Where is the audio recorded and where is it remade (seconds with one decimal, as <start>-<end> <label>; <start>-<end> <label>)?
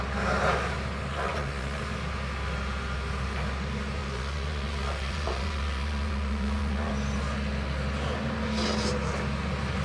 0.0-1.1 recorded; 1.1-1.8 remade; 1.8-4.0 recorded; 4.0-6.9 remade; 6.9-9.8 recorded